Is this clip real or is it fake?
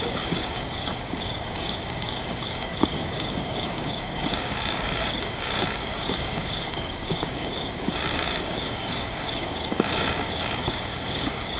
fake